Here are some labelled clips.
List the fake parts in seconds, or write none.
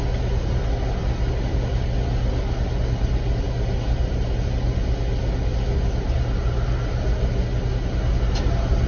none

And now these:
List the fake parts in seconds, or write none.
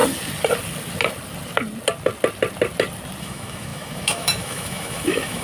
3.2-5.4 (autoencoder, DAC-VAE)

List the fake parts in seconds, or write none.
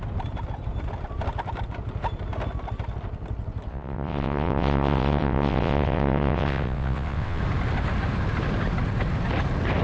3.7-7.4 (vocoder, WaveNeXt)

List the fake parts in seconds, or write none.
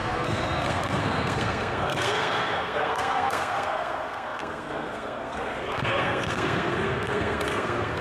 0.0-8.0 (codec, SNAC)